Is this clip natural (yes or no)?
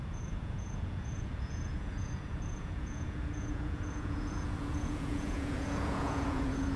no